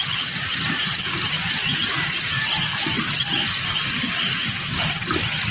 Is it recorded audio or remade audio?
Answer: remade